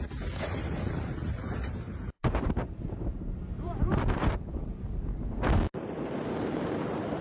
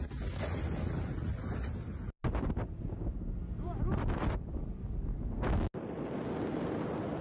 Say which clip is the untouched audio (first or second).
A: second